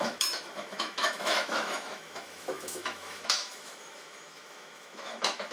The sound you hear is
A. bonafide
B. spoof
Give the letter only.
B